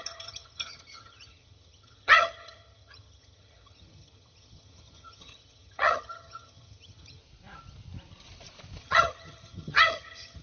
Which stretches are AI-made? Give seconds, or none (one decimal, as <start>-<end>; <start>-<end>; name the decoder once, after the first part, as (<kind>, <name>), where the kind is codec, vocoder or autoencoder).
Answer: 0.0-7.2 (vocoder, HiFi-GAN); 8.8-10.4